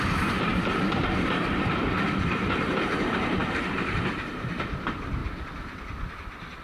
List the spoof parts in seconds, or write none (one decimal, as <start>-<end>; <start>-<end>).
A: 0.0-5.2